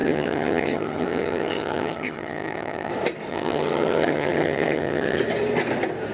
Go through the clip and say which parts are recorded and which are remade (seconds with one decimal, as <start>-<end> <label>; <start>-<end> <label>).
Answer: 0.0-2.9 remade; 2.9-3.3 recorded; 3.3-5.2 remade; 5.2-6.1 recorded